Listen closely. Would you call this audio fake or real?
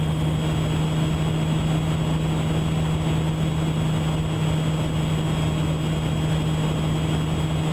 real